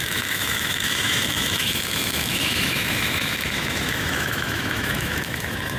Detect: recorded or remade remade